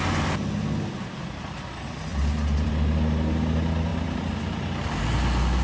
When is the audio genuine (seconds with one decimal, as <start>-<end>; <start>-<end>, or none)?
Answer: 0.0-2.1; 2.7-5.6